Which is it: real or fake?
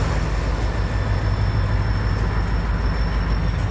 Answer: real